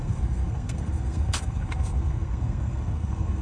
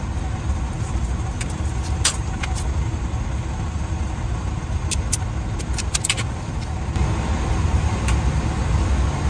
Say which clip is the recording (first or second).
second